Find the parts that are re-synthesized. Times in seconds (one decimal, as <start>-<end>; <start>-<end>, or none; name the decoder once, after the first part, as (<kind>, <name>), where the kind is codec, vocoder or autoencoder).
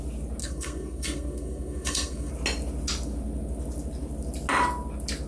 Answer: 0.4-2.3 (codec, SNAC)